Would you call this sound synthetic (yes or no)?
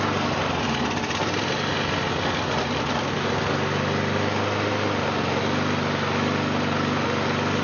no